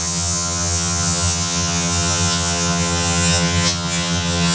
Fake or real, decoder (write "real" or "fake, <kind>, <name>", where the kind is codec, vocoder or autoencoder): fake, vocoder, HiFi-GAN